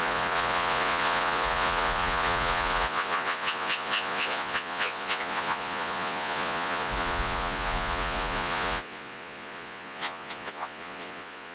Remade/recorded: remade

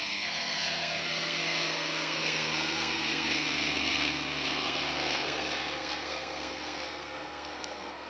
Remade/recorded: remade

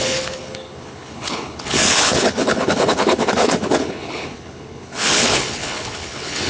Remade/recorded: remade